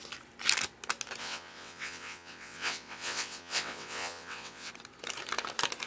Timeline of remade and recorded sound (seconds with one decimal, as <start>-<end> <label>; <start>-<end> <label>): 0.0-1.2 recorded; 1.2-4.7 remade; 4.7-5.9 recorded